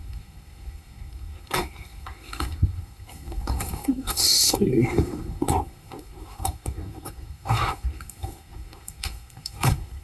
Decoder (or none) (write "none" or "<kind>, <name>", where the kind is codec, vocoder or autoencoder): codec, SNAC